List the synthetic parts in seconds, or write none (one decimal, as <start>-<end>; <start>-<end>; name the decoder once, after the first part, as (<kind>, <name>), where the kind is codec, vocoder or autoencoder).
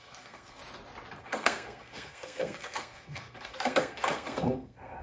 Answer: 0.0-0.6 (codec, SNAC); 1.2-5.0